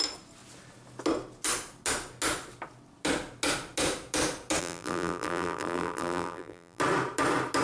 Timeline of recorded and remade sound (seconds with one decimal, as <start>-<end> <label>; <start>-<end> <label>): 0.0-4.6 recorded; 4.6-6.8 remade; 6.8-7.6 recorded